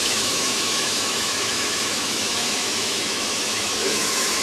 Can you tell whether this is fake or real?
fake